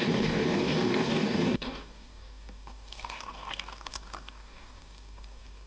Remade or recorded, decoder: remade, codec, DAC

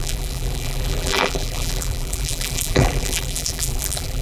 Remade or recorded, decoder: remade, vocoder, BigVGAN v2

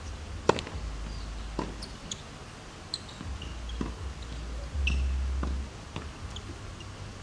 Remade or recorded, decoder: recorded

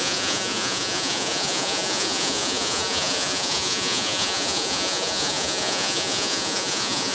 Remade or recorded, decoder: remade, vocoder, Vocos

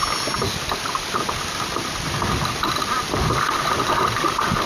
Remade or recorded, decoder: recorded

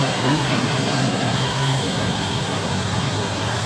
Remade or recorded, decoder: remade, codec, SNAC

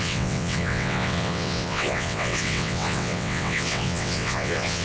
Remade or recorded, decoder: remade, vocoder, WaveNeXt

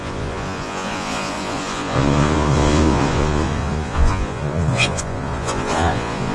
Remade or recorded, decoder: remade, vocoder, Vocos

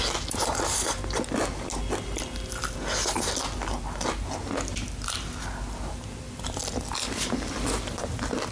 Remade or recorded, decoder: recorded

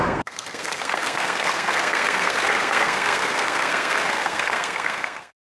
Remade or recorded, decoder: remade, codec, SNAC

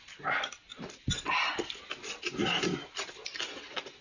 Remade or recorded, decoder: recorded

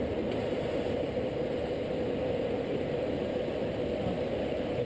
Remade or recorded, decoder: recorded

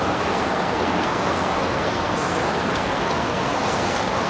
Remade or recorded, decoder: remade, codec, SNAC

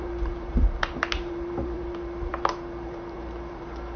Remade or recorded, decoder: remade, vocoder, BigVGAN v2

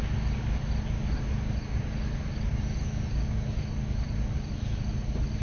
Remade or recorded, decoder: recorded